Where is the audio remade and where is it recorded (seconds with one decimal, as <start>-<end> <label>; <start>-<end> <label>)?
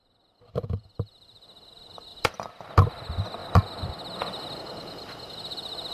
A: 0.0-0.8 remade; 0.8-2.1 recorded; 2.1-2.7 remade; 2.7-3.4 recorded; 3.4-3.9 remade; 3.9-5.9 recorded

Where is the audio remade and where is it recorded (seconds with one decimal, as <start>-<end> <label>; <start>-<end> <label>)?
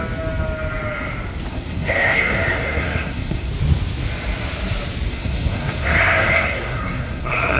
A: 0.0-1.5 recorded; 1.5-3.5 remade; 3.5-5.1 recorded; 5.1-7.6 remade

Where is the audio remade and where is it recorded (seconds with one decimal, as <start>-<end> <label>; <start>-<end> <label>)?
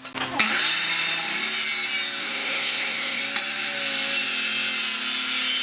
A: 0.0-2.2 recorded; 2.2-3.2 remade; 3.2-5.6 recorded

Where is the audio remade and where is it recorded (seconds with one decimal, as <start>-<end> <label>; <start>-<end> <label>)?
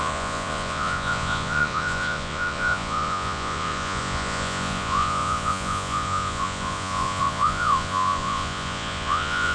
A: 0.0-9.5 remade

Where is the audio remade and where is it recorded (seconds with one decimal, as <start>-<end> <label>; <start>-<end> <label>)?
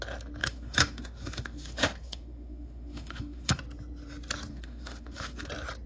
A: 0.0-0.4 recorded; 0.4-3.6 remade; 3.6-4.5 recorded; 4.5-5.5 remade; 5.5-5.9 recorded